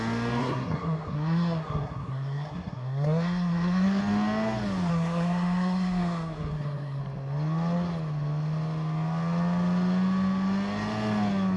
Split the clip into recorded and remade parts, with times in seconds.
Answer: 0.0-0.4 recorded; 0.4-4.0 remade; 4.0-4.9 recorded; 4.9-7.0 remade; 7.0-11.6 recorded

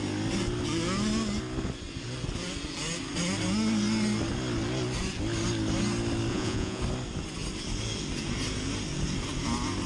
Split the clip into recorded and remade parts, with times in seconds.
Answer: 0.0-6.3 recorded; 6.3-6.8 remade; 6.8-9.9 recorded

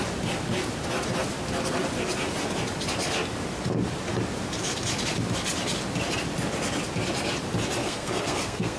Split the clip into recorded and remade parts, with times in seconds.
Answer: 0.0-7.8 recorded; 7.8-8.8 remade

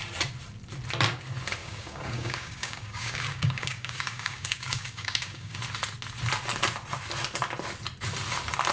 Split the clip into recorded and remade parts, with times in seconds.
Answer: 0.0-1.6 recorded; 1.6-5.6 remade; 5.6-8.7 recorded

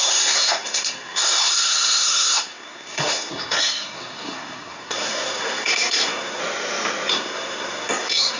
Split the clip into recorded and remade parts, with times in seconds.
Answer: 0.0-6.4 remade; 6.4-7.1 recorded; 7.1-8.4 remade